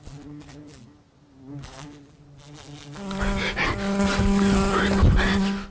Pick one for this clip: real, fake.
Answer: real